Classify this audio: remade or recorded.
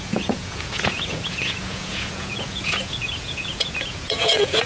remade